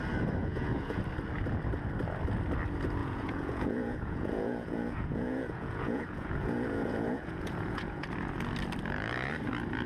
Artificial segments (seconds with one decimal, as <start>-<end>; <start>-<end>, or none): 0.4-1.0; 3.0-8.1